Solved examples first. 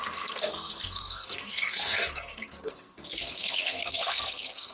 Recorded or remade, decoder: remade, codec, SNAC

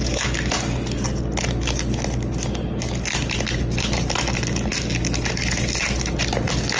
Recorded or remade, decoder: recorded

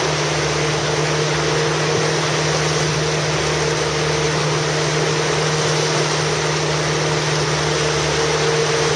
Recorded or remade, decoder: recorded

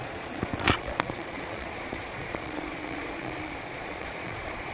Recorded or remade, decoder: remade, vocoder, Vocos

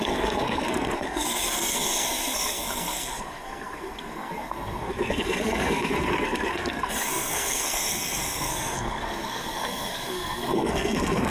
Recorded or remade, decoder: remade, codec, SNAC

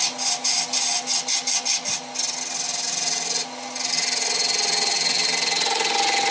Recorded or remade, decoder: recorded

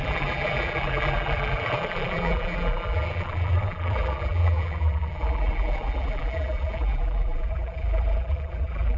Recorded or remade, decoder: remade, vocoder, BigVGAN v2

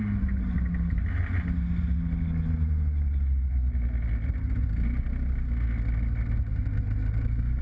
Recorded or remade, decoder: recorded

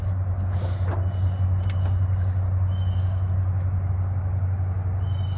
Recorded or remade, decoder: recorded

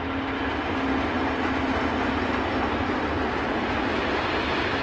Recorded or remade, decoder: recorded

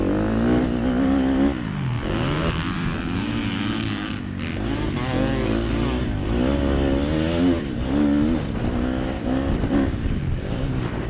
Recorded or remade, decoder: recorded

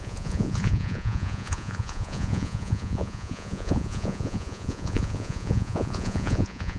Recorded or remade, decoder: remade, vocoder, Vocos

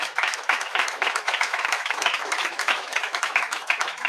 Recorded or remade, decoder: remade, autoencoder, DAC-VAE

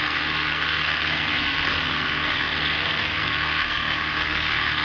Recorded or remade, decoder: remade, codec, SNAC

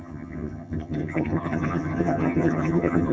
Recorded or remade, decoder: remade, vocoder, HiFi-GAN